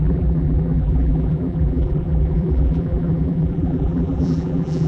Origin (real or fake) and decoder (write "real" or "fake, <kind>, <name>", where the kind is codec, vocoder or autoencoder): fake, vocoder, BigVGAN v2